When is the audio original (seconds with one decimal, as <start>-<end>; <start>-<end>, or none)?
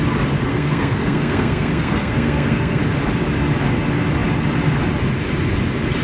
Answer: 0.0-0.5; 2.8-6.0